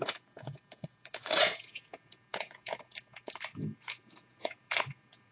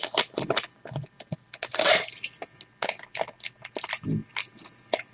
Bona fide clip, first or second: second